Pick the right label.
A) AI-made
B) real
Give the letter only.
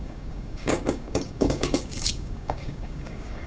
A